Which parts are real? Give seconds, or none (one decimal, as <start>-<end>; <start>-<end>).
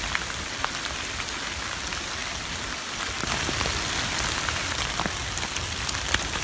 0.0-6.4